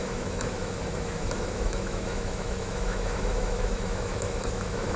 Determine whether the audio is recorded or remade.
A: remade